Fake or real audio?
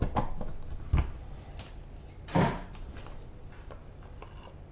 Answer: real